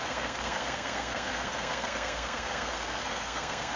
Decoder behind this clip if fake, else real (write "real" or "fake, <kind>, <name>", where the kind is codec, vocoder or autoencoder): fake, codec, SNAC